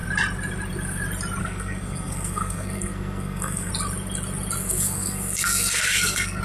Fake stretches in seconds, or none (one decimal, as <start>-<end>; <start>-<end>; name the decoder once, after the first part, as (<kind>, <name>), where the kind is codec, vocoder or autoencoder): 1.4-3.7 (codec, SNAC); 4.6-6.4